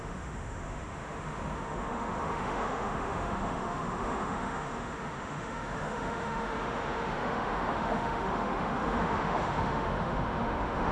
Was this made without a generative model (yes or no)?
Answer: no